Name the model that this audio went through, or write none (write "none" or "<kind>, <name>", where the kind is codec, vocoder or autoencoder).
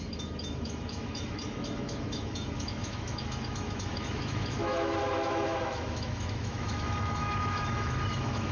autoencoder, DAC-VAE